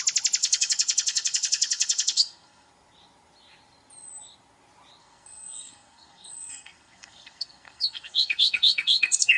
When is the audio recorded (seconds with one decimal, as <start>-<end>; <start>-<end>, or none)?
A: 0.0-0.4; 2.7-5.0